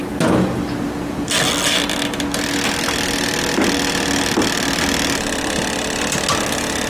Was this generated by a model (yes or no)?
no